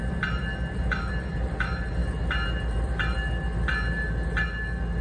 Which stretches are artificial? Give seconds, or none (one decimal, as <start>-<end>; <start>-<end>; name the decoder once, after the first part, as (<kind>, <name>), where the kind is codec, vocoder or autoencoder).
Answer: none

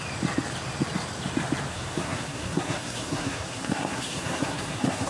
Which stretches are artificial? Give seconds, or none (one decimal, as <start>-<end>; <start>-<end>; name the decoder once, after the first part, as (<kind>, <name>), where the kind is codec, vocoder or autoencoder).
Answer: 1.7-5.1 (codec, SNAC)